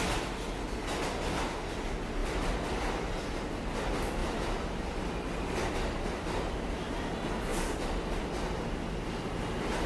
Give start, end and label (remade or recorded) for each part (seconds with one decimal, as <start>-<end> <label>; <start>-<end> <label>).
0.0-7.5 recorded; 7.5-8.2 remade; 8.2-9.9 recorded

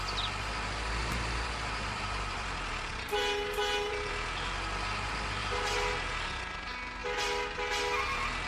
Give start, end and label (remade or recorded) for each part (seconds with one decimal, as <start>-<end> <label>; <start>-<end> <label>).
0.0-1.0 recorded; 1.0-4.1 remade; 4.1-5.4 recorded; 5.4-6.1 remade; 6.1-8.5 recorded

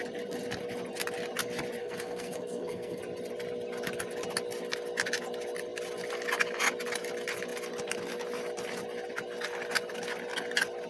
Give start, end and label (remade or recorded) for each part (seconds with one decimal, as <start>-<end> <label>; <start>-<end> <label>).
0.0-1.8 recorded; 1.8-3.0 remade; 3.0-10.9 recorded

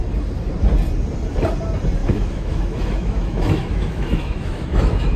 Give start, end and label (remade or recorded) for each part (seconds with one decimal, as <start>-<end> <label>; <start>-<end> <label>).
0.0-2.0 recorded; 2.0-5.2 remade

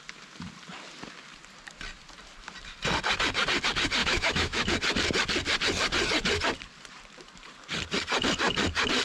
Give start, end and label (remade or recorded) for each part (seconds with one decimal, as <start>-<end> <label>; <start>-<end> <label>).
0.0-4.0 recorded; 4.0-4.7 remade; 4.7-9.0 recorded